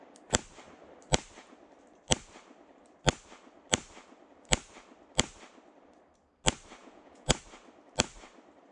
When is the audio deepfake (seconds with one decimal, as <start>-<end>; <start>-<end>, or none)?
6.8-7.4